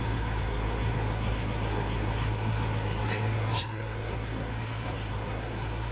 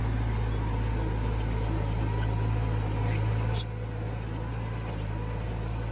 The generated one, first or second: first